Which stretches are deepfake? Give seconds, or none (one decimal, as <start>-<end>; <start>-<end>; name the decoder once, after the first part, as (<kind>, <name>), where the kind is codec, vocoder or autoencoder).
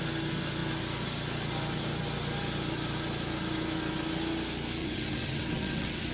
4.8-6.1 (vocoder, WaveNeXt)